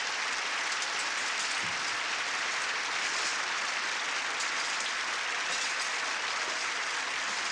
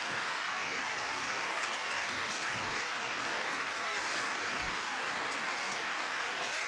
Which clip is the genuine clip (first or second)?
first